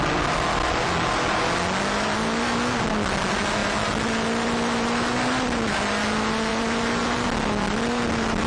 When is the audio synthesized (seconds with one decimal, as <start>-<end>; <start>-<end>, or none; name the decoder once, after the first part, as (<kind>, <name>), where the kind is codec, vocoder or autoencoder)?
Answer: none